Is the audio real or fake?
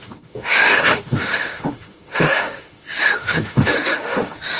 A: fake